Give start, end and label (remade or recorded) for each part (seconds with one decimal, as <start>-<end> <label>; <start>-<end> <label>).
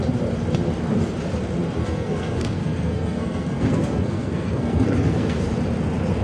0.0-1.8 recorded; 1.8-5.5 remade; 5.5-6.2 recorded